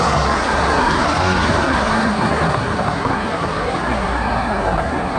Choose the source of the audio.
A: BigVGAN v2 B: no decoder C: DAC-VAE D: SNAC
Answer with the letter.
D